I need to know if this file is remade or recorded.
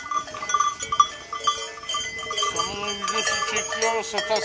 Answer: recorded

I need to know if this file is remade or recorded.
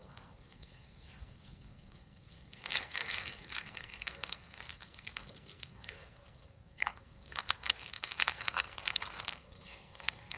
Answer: remade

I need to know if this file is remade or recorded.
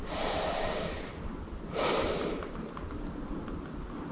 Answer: recorded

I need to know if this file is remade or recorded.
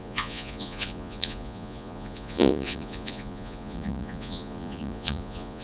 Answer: remade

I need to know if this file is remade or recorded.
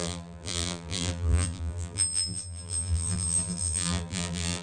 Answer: remade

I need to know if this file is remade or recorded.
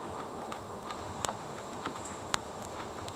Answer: remade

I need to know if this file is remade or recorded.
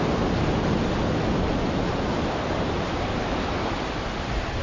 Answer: recorded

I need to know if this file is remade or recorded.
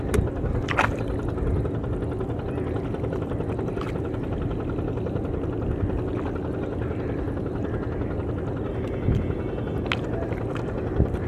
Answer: recorded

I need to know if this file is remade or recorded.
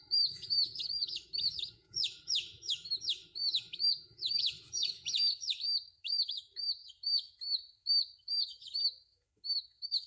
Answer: remade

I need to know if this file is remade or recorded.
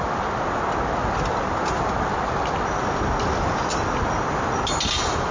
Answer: recorded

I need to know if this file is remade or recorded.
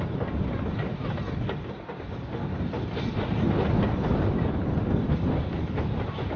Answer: recorded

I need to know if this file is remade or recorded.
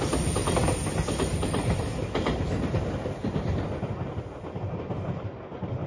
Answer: recorded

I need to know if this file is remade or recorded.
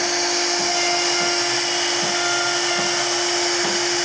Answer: recorded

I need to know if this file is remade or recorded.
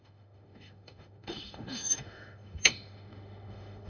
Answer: remade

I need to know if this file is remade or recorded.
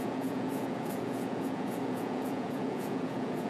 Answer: remade